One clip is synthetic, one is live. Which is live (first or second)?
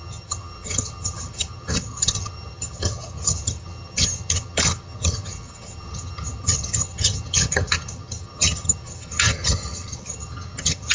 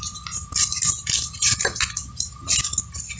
second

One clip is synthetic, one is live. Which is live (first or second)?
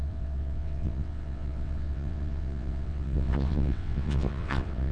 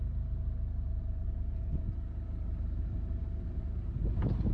second